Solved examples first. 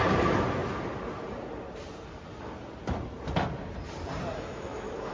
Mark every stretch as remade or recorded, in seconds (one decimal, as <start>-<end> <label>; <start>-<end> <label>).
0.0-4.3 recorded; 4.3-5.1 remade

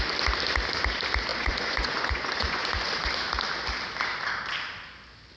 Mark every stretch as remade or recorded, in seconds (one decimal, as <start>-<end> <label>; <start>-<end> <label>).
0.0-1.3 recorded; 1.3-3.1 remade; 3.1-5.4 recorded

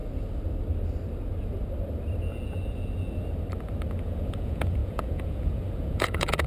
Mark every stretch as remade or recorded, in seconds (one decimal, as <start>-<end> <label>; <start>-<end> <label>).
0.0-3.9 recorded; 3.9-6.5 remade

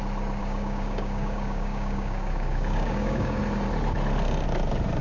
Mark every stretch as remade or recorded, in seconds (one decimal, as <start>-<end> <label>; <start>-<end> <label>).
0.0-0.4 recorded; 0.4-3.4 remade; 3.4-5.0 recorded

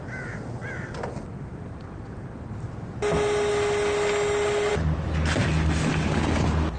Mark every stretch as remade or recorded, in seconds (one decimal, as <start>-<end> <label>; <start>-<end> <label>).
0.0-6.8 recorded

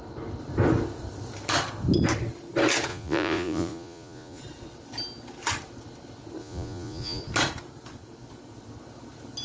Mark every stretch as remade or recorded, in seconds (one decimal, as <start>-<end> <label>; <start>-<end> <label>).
0.0-2.9 recorded; 2.9-4.4 remade; 4.4-6.4 recorded; 6.4-7.2 remade; 7.2-9.4 recorded

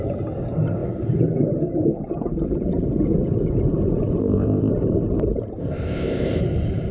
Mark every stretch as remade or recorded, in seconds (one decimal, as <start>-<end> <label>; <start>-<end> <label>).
0.0-4.2 recorded; 4.2-4.7 remade; 4.7-5.6 recorded; 5.6-6.4 remade; 6.4-6.9 recorded

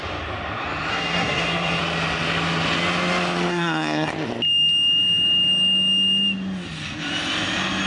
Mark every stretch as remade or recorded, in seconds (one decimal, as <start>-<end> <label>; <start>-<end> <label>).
0.0-0.9 recorded; 0.9-1.8 remade; 1.8-3.5 recorded; 3.5-4.1 remade; 4.1-7.9 recorded